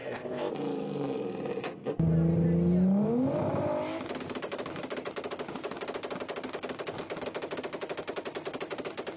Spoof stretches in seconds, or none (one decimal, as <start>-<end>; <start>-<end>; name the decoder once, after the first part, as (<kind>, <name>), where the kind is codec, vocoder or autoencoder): 0.0-0.5 (codec, ZipCodec)